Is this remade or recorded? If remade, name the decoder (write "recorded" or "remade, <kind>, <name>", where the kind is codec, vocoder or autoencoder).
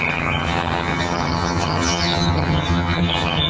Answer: remade, vocoder, HiFi-GAN